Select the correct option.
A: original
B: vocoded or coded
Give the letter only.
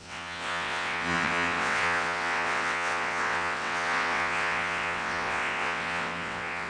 B